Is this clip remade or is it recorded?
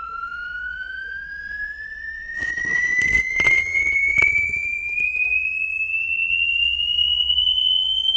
remade